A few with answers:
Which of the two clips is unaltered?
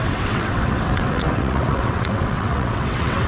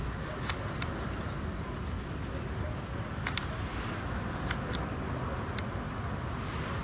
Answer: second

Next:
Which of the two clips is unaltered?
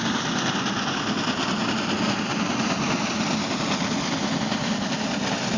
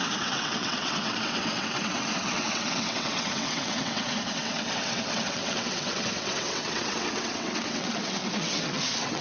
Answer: first